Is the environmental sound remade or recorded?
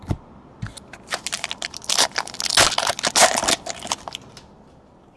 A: recorded